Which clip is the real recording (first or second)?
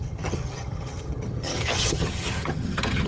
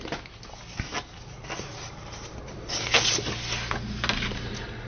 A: second